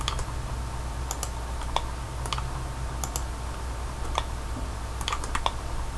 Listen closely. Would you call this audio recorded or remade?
recorded